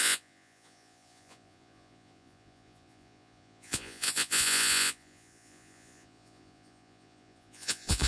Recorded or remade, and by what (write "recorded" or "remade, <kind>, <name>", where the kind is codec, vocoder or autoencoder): remade, vocoder, Vocos